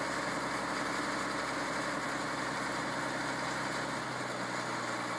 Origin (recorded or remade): recorded